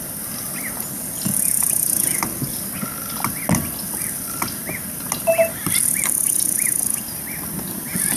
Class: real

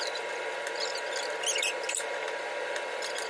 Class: real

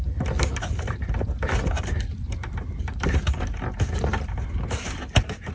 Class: real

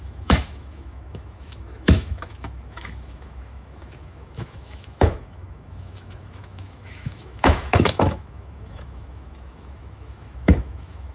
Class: fake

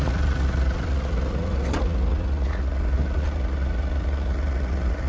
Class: fake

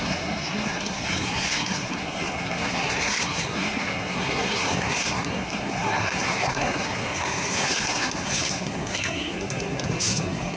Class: fake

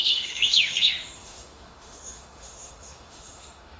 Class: fake